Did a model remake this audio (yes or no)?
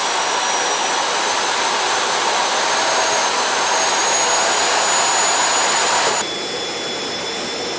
no